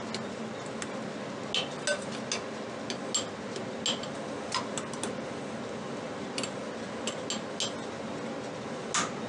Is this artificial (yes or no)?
no